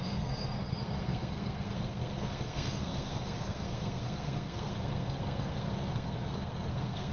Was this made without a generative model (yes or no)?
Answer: no